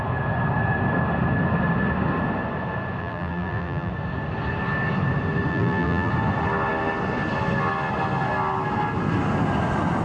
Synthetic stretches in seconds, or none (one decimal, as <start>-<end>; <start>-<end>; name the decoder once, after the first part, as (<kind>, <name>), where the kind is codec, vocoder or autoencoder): 3.0-3.9 (vocoder, BigVGAN v2); 5.5-6.1